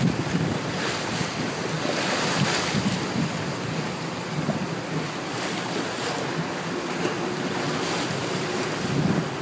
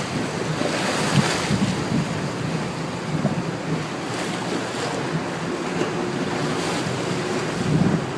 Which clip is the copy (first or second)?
first